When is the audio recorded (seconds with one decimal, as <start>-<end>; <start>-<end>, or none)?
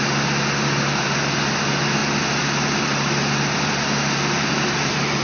0.0-5.2